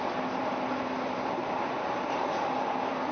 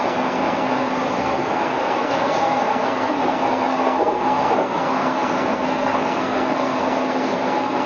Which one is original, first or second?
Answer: first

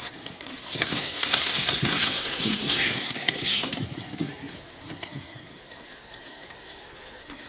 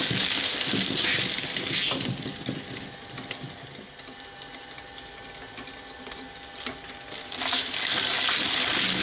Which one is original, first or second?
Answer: second